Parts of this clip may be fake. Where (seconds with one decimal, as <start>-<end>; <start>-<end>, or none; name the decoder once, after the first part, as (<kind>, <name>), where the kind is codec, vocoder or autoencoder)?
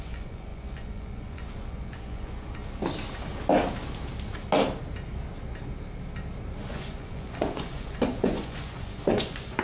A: 0.0-2.6 (vocoder, Vocos); 6.7-9.6